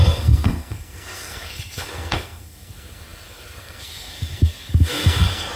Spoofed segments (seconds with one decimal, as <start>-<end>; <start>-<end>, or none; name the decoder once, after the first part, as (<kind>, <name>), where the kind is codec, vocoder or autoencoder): 0.0-5.6 (codec, SNAC)